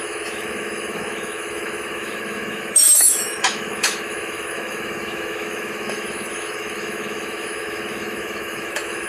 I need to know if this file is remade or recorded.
remade